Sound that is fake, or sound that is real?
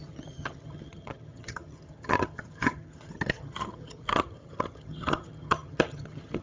fake